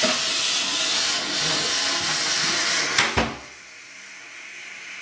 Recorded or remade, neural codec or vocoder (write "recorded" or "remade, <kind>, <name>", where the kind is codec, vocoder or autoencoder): recorded